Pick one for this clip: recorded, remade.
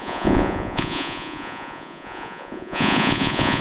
remade